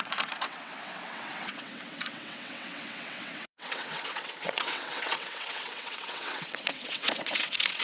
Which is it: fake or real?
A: fake